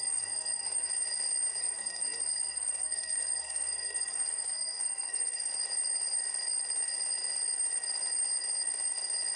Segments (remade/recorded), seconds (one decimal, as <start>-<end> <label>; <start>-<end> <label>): 0.0-0.9 remade; 0.9-1.6 recorded; 1.6-5.5 remade; 5.5-9.4 recorded